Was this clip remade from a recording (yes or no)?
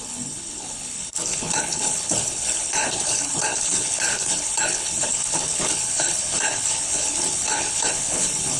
yes